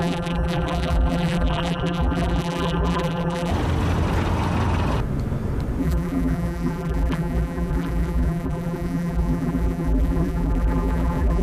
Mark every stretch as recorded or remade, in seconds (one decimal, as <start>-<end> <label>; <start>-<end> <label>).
0.0-3.5 remade; 3.5-5.8 recorded; 5.8-11.4 remade